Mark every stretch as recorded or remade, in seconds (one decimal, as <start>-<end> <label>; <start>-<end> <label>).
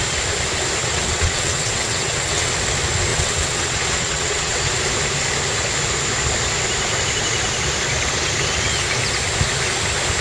0.0-0.8 recorded; 0.8-2.5 remade; 2.5-3.1 recorded; 3.1-4.7 remade; 4.7-10.2 recorded